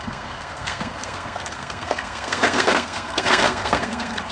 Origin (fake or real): fake